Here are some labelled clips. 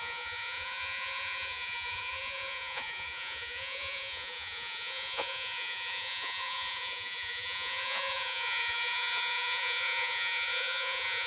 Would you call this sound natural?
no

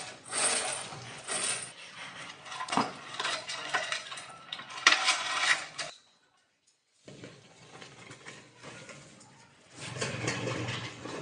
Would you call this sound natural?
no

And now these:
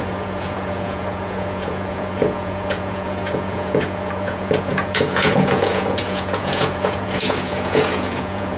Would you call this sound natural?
no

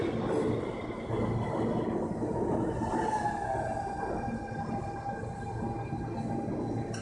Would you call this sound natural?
yes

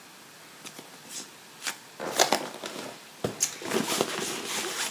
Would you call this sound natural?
yes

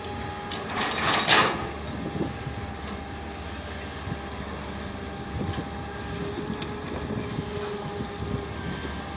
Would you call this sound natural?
yes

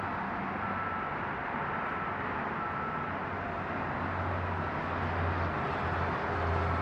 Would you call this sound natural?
yes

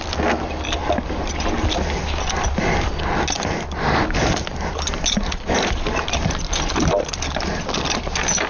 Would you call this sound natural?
yes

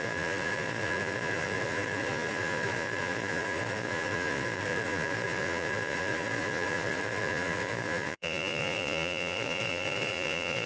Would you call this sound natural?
no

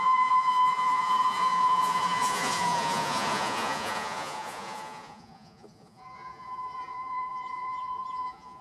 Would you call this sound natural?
no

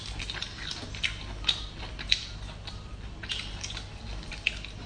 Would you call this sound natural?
yes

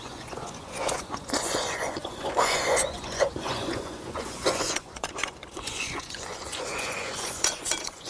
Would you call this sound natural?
no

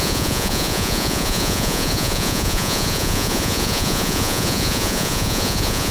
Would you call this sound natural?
no